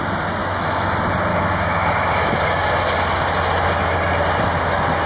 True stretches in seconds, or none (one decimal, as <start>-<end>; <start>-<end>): 0.0-0.4; 0.9-1.3; 2.7-5.1